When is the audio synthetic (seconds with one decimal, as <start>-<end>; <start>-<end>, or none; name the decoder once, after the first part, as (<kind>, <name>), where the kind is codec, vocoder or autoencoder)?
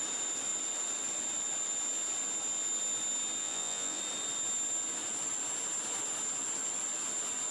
3.4-4.0 (vocoder, Vocos)